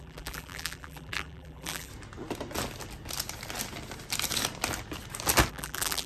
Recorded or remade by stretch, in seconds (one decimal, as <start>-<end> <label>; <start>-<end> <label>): 0.0-1.9 remade; 1.9-5.5 recorded; 5.5-6.1 remade